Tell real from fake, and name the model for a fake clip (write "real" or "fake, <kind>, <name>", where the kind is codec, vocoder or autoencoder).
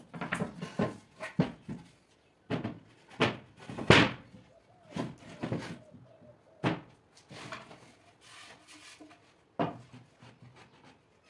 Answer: real